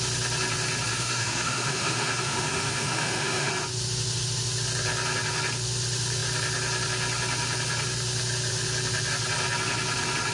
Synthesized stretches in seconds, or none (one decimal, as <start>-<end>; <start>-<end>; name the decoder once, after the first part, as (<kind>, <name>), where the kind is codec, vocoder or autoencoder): 0.9-3.5 (autoencoder, DAC-VAE)